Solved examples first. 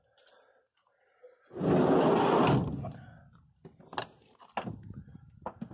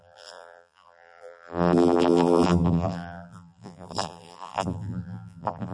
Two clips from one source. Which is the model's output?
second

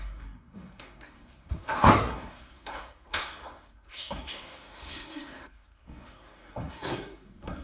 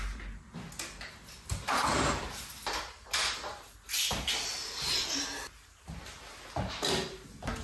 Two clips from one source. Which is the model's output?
first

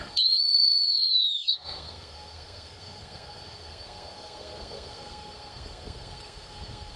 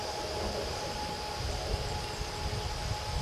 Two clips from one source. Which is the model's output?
first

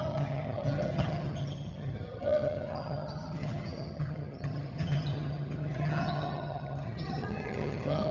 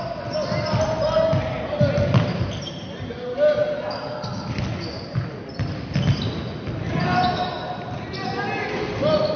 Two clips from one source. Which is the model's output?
first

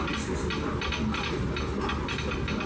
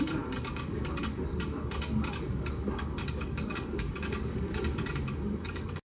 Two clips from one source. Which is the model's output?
second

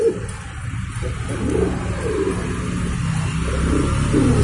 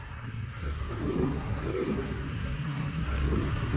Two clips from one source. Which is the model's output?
second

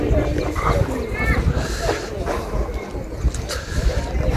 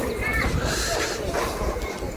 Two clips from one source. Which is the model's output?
second